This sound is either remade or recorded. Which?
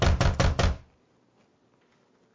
recorded